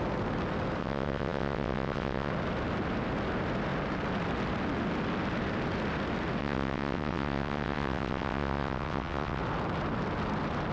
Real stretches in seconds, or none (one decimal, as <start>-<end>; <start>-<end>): 0.0-0.8; 2.3-6.4; 9.4-10.7